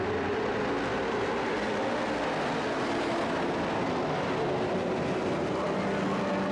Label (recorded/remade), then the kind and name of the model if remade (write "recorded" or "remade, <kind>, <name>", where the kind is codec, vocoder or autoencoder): recorded